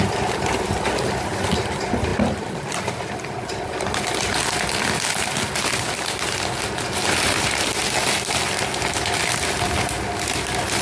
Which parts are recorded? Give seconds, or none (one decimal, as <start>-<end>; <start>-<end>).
0.0-10.8